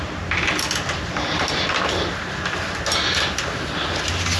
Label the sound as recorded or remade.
recorded